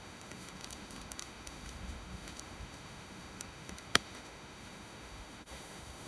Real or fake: fake